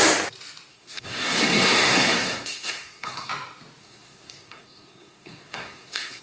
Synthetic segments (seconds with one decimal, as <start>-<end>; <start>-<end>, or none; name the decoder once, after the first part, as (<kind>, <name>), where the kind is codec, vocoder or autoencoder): 0.7-3.3 (codec, SNAC); 3.8-6.2